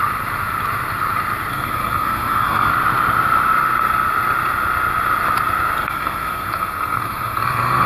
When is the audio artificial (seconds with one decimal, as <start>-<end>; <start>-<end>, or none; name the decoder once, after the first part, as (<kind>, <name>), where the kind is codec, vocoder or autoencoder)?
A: 1.5-2.7 (codec, SNAC); 5.8-7.9